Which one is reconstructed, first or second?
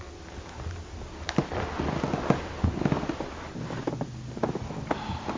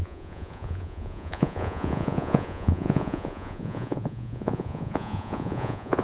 second